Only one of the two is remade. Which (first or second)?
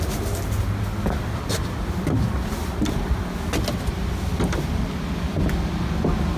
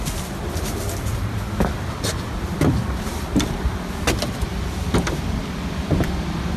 second